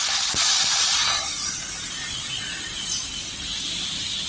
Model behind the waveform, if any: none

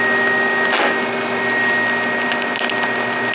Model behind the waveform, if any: none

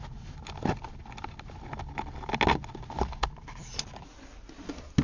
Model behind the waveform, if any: none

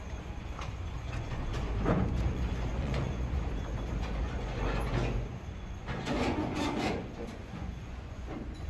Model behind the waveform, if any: vocoder, Vocos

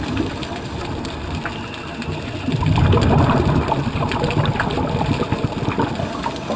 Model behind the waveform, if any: none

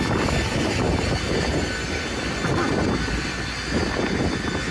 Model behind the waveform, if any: none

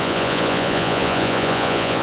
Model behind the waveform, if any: vocoder, Vocos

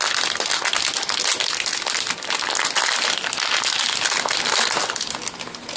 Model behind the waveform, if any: none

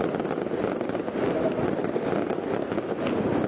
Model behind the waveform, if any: none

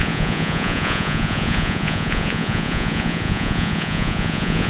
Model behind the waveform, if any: vocoder, Vocos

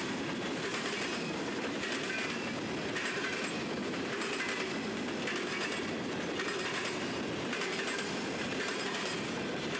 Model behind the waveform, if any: none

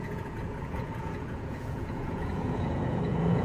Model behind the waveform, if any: vocoder, Vocos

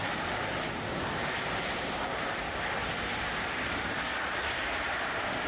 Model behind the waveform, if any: none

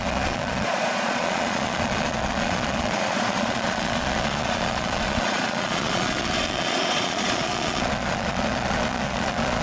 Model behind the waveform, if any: vocoder, Vocos